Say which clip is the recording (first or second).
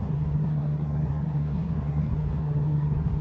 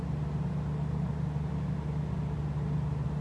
second